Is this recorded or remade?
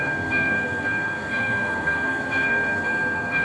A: remade